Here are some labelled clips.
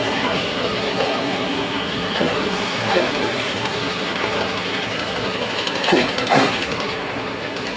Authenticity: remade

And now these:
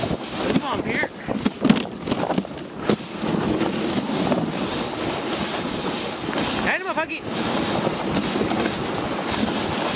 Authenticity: recorded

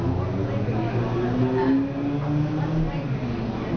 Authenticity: recorded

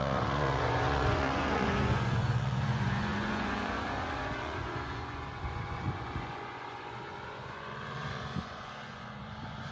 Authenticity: remade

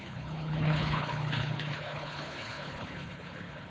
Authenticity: remade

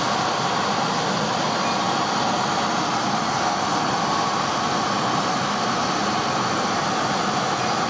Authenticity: recorded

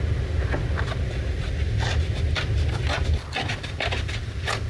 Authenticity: recorded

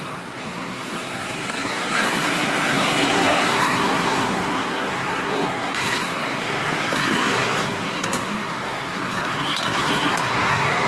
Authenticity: remade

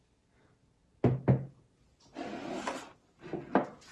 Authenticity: recorded